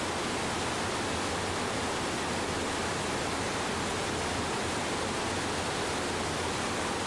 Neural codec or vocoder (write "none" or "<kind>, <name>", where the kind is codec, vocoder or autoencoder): none